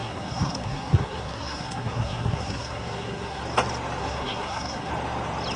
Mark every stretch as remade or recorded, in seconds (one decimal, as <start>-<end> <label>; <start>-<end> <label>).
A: 0.0-3.4 remade; 3.4-4.0 recorded; 4.0-4.9 remade; 4.9-5.6 recorded